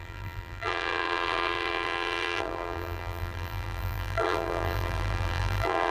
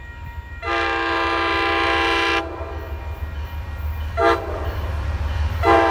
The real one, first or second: second